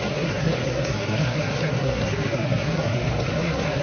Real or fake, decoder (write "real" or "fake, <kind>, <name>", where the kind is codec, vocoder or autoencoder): fake, codec, SNAC